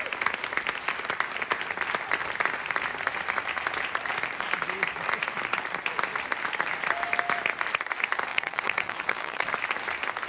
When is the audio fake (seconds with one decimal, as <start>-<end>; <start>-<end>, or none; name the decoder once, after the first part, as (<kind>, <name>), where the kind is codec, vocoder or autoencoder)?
8.3-9.5 (vocoder, WaveNeXt)